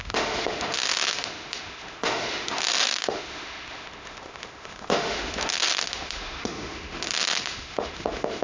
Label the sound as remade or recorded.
remade